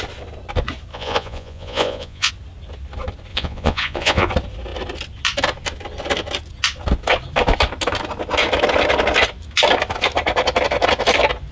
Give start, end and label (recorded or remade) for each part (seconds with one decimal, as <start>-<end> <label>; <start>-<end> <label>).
0.0-0.9 recorded; 0.9-2.3 remade; 2.3-3.3 recorded; 3.3-4.3 remade; 4.3-11.5 recorded